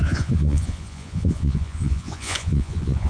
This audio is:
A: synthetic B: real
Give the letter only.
A